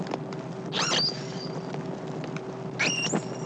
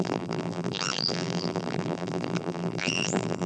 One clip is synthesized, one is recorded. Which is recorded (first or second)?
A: first